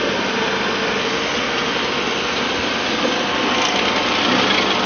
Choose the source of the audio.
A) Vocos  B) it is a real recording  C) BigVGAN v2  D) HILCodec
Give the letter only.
B